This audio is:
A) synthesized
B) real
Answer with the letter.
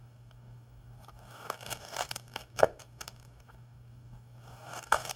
A